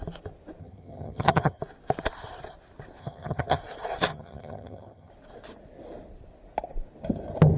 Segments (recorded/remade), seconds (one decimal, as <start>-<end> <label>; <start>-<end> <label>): 0.0-0.6 recorded; 0.6-1.6 remade; 1.6-3.0 recorded; 3.0-3.6 remade; 3.6-4.1 recorded; 4.1-5.1 remade; 5.1-7.6 recorded